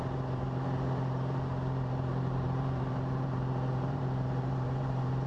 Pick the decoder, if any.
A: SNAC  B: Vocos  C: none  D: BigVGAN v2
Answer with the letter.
D